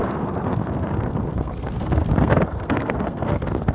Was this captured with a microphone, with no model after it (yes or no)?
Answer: no